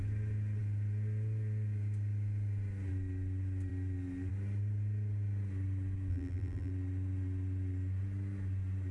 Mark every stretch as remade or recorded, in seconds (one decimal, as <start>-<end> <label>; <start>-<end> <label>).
0.0-6.1 recorded; 6.1-6.7 remade; 6.7-8.9 recorded